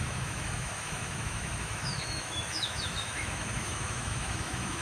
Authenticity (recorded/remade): remade